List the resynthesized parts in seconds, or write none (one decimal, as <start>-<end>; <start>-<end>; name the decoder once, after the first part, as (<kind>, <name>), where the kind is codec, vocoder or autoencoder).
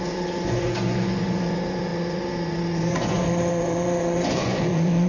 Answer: 0.0-5.1 (vocoder, Vocos)